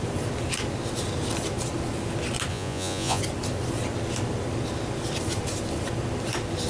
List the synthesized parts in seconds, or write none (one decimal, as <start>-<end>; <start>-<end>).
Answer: 2.5-3.2